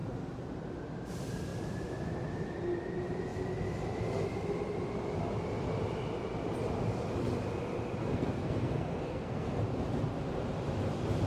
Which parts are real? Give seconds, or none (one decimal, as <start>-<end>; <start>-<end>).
0.0-8.0; 9.6-11.3